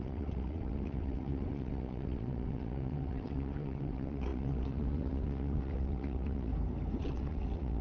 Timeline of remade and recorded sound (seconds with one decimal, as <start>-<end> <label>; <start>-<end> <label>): 0.0-6.5 remade; 6.5-7.0 recorded; 7.0-7.8 remade